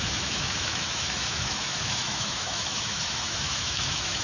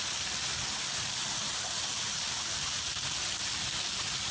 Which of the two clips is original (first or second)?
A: second